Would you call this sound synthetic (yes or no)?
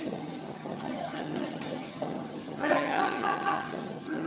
yes